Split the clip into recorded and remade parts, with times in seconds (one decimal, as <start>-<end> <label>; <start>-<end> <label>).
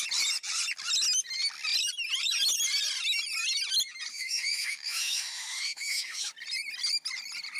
0.0-4.1 recorded; 4.1-6.3 remade; 6.3-7.6 recorded